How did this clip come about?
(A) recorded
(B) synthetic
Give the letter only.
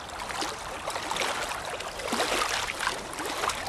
A